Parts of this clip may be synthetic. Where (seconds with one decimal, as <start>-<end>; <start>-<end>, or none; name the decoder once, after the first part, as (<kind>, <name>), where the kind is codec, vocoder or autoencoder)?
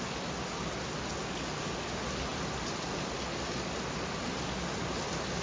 none